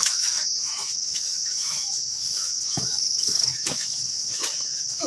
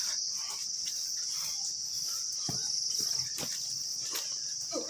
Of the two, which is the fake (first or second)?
first